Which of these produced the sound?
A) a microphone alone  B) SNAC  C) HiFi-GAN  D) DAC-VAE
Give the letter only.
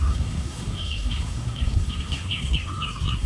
B